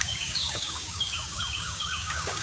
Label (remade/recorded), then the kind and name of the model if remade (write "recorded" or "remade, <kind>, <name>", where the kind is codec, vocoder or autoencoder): remade, codec, DAC